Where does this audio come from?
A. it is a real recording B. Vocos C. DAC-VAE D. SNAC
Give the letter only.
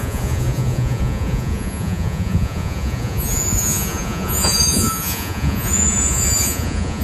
B